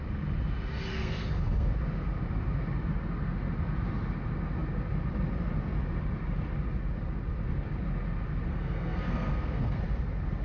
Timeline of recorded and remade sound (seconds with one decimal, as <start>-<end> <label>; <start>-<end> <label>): 0.0-0.9 recorded; 0.9-1.7 remade; 1.7-8.5 recorded; 8.5-9.8 remade; 9.8-10.4 recorded